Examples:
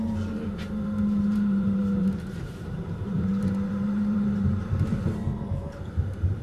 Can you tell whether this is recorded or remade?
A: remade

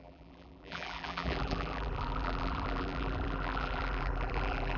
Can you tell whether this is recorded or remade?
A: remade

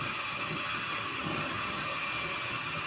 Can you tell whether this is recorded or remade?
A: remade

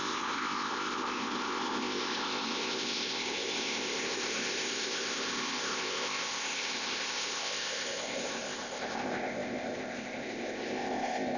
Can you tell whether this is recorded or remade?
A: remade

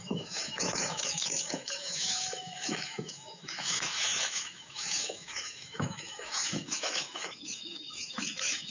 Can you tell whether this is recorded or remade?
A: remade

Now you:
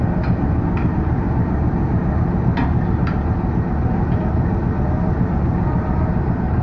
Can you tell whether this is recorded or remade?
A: recorded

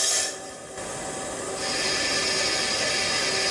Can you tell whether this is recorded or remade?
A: recorded